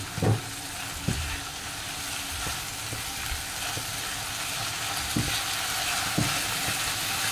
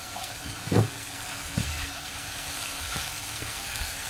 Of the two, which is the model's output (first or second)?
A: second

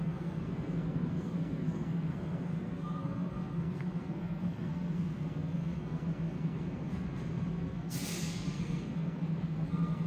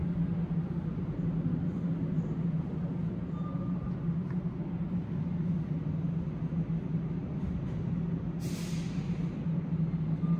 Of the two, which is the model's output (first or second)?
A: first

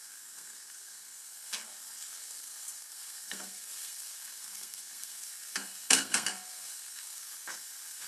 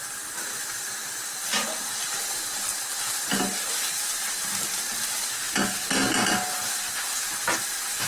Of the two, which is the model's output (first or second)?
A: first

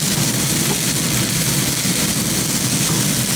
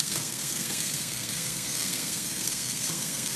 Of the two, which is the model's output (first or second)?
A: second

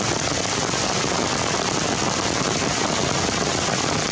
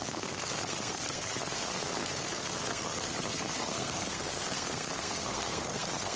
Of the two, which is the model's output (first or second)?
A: second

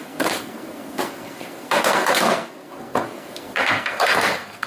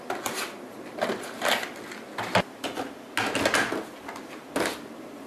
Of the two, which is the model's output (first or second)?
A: first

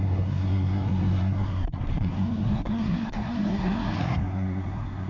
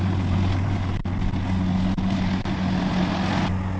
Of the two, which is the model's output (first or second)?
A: first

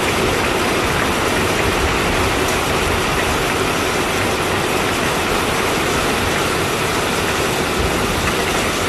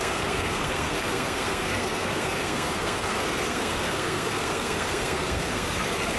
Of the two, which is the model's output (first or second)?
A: second